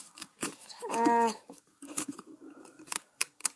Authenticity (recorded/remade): remade